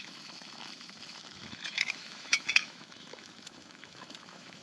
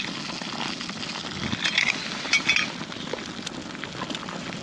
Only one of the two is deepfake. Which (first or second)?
first